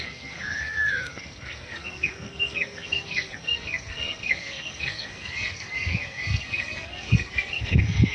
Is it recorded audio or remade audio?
remade